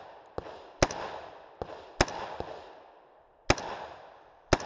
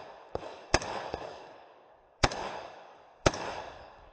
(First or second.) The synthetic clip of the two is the second